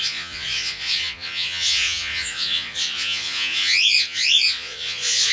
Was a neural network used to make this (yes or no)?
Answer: yes